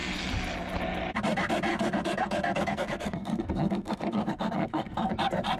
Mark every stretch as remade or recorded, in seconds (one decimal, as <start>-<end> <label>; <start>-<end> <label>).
0.0-1.7 recorded; 1.7-5.1 remade; 5.1-5.6 recorded